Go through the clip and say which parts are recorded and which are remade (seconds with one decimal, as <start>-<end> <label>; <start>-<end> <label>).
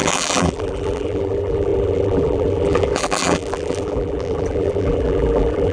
0.0-5.7 remade